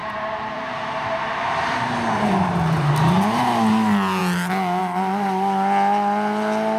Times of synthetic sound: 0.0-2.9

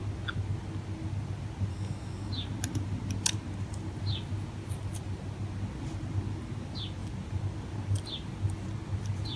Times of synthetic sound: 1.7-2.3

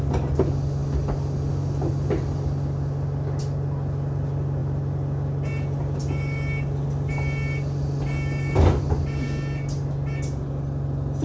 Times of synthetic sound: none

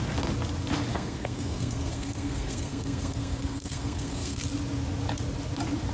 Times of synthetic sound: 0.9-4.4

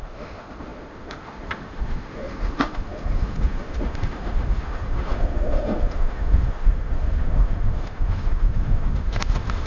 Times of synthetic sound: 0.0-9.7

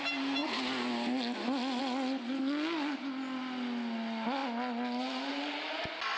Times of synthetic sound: none